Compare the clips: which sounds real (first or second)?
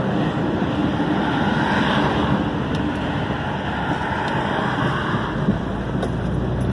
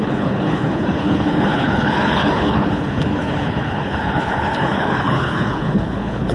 first